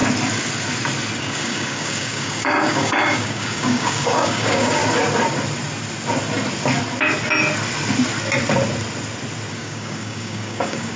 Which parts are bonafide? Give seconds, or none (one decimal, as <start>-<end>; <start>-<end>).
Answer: 0.0-1.2; 4.8-9.5